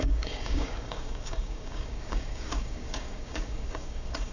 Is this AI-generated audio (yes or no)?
yes